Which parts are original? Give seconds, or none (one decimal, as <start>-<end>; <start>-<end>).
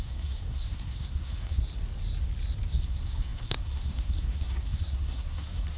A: 1.6-2.7